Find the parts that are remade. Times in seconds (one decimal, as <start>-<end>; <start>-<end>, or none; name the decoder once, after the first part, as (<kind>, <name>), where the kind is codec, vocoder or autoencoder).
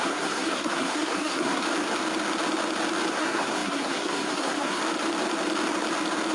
0.0-1.6 (codec, SNAC); 3.1-4.8